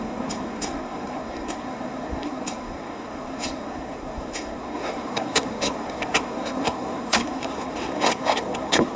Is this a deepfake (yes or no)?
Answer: yes